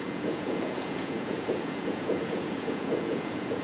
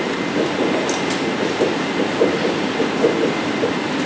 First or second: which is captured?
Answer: second